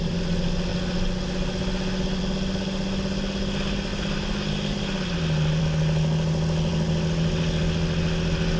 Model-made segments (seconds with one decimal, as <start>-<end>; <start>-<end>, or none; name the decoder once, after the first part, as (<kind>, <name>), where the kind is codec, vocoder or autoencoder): none